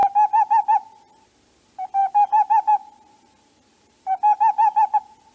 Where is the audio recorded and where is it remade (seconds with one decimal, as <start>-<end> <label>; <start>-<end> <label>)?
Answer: 0.0-5.3 recorded